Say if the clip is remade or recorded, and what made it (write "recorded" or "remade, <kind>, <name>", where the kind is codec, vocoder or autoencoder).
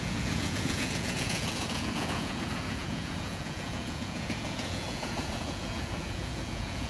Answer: remade, vocoder, Vocos